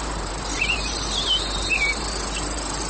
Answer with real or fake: fake